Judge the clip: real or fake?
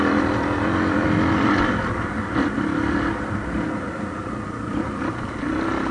fake